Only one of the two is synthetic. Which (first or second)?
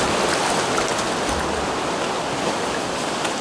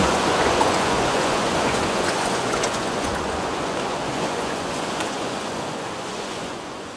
second